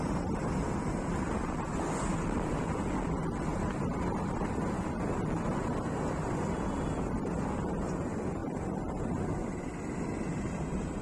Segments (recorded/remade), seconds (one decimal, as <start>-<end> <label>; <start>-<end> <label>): 0.0-11.0 recorded